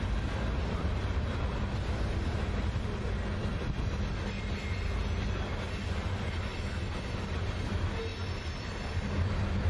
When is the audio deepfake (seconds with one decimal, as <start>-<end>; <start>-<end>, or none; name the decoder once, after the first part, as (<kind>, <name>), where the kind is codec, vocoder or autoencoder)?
none